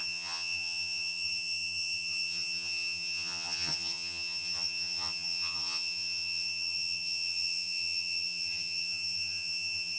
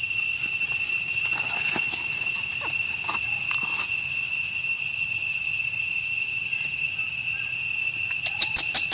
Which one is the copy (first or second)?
first